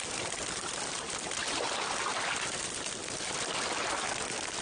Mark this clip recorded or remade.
recorded